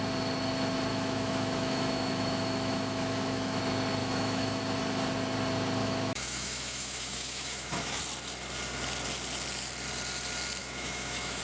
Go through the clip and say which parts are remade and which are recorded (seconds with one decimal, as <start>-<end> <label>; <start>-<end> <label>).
0.0-0.9 recorded; 0.9-3.6 remade; 3.6-4.0 recorded; 4.0-4.6 remade; 4.6-5.8 recorded; 5.8-8.0 remade; 8.0-10.6 recorded; 10.6-11.4 remade